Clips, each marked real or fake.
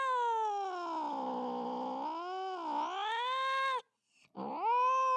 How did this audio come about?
real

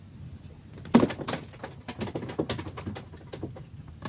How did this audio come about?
real